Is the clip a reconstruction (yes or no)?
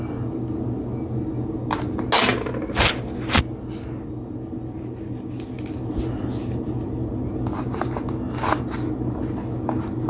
no